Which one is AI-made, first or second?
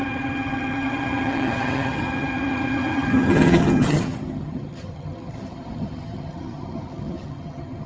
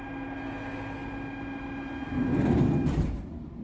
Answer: first